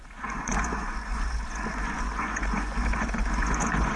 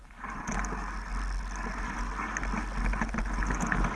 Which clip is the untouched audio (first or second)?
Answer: second